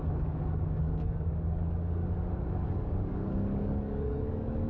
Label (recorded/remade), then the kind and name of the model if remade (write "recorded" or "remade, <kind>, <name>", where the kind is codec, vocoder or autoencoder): remade, codec, DAC